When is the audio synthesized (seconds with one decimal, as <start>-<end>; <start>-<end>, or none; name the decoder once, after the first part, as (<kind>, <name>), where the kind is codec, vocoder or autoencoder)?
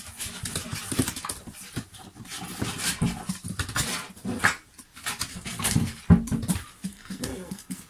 5.3-6.0 (codec, SNAC); 6.9-7.9